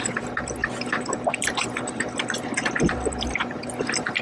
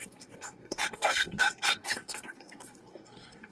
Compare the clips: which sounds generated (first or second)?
second